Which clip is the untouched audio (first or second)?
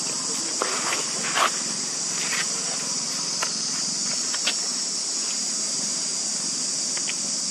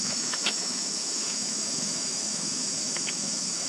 first